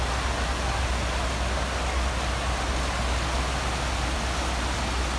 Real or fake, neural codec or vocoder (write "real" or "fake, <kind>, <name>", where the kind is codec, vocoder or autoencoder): real